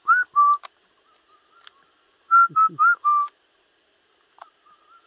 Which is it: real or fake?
real